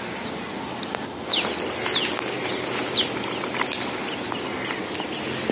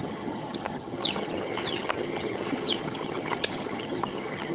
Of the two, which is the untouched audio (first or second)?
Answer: first